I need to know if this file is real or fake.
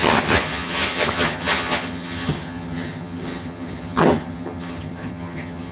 fake